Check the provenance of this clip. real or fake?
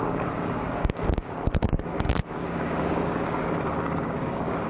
fake